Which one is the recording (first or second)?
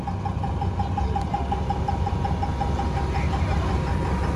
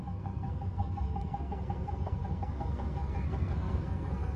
first